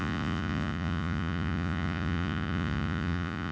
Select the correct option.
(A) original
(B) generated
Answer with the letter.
B